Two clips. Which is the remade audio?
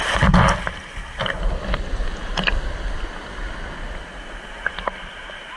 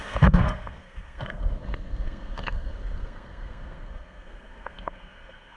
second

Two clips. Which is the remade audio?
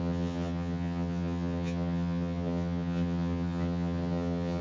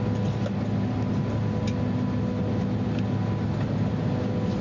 first